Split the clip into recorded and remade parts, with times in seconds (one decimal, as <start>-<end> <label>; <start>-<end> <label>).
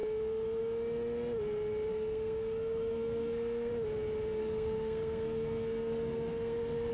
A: 0.0-1.9 recorded; 1.9-3.7 remade; 3.7-4.4 recorded; 4.4-6.9 remade